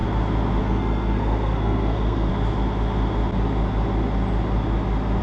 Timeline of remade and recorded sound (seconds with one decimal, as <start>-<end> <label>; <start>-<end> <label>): 0.0-0.6 recorded; 0.6-2.3 remade; 2.3-5.2 recorded